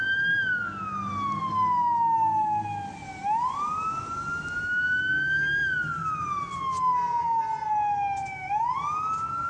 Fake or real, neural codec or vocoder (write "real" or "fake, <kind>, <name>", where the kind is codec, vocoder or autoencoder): real